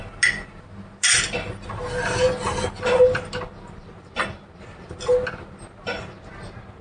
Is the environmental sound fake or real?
real